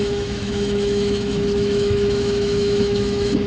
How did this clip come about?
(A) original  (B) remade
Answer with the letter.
B